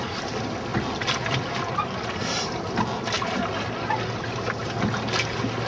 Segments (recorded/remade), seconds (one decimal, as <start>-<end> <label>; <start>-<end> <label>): 0.0-5.7 recorded

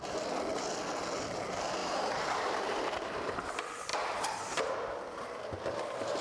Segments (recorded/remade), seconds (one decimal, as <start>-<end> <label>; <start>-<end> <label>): 0.0-1.8 recorded; 1.8-2.8 remade; 2.8-3.9 recorded; 3.9-5.0 remade; 5.0-6.2 recorded

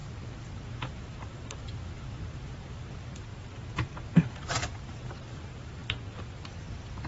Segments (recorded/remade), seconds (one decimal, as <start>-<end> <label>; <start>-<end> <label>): 0.0-0.5 recorded; 0.5-3.3 remade; 3.3-4.0 recorded; 4.0-7.1 remade

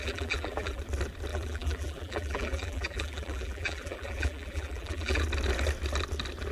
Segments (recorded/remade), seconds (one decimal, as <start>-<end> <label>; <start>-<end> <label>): 0.0-0.8 remade; 0.8-1.3 recorded; 1.3-5.2 remade; 5.2-6.5 recorded

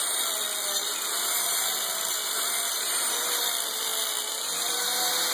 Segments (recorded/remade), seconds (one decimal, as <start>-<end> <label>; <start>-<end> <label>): 0.0-5.3 recorded

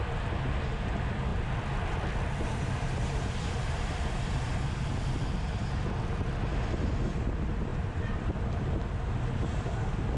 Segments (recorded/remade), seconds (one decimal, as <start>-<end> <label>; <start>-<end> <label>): 0.0-1.3 recorded; 1.3-4.7 remade; 4.7-7.7 recorded; 7.7-8.6 remade; 8.6-10.2 recorded

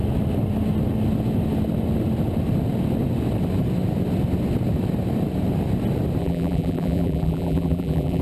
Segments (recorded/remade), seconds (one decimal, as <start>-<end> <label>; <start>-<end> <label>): 0.0-6.2 recorded; 6.2-8.2 remade